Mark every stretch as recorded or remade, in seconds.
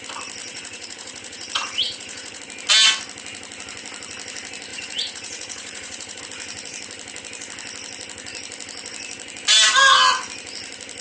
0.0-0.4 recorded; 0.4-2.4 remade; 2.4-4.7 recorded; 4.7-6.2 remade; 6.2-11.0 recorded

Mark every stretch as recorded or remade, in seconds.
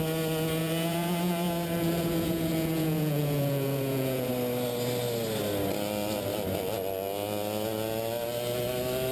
0.0-0.6 recorded; 0.6-4.3 remade; 4.3-9.1 recorded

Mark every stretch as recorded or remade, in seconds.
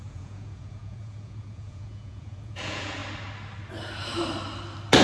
0.0-3.0 remade; 3.0-5.0 recorded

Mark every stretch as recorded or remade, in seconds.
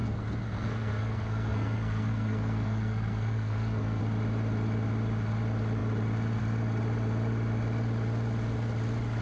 0.0-4.0 remade; 4.0-9.2 recorded